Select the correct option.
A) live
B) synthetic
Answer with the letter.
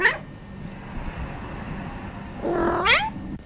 A